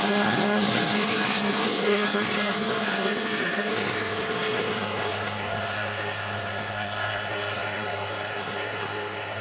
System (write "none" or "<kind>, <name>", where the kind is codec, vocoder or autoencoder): codec, SNAC